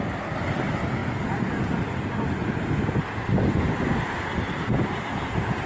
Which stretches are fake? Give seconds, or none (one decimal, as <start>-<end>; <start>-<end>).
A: none